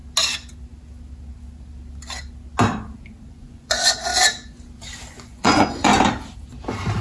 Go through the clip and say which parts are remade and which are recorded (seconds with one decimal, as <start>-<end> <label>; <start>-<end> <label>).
0.0-3.3 recorded; 3.3-4.1 remade; 4.1-5.1 recorded; 5.1-5.9 remade; 5.9-7.0 recorded